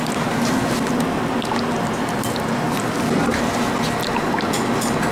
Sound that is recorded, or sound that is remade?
recorded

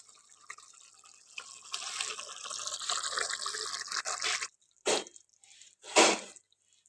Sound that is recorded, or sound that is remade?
remade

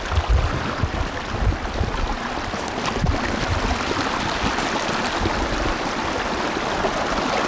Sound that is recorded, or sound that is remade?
recorded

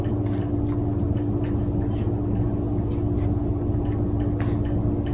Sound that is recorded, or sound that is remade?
recorded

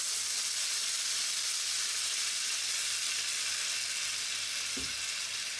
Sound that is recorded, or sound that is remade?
recorded